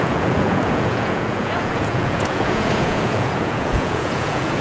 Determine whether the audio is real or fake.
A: fake